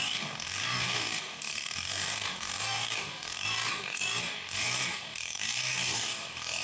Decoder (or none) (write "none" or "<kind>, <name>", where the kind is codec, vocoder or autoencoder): codec, DAC